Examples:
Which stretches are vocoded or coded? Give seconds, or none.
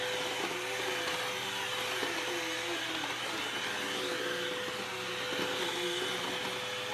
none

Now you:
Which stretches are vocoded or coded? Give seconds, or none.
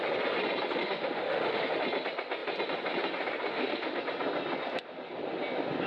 0.8-1.8 (autoencoder, DAC-VAE); 3.5-4.0